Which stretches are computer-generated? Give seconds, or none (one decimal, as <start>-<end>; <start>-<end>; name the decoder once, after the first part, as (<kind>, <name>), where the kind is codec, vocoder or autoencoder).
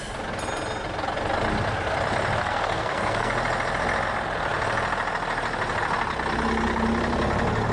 2.4-3.3 (codec, SNAC)